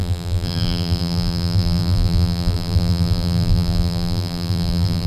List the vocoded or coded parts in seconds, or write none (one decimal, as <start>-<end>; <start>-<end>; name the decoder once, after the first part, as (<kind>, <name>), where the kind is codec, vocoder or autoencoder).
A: 0.0-5.1 (vocoder, BigVGAN v2)